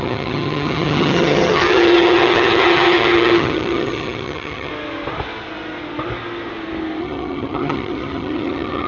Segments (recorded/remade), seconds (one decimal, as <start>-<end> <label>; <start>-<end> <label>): 0.0-4.7 remade; 4.7-7.0 recorded; 7.0-8.9 remade